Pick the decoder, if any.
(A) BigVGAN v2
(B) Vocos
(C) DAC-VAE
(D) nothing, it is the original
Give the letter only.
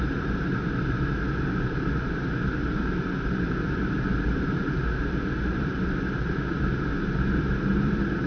A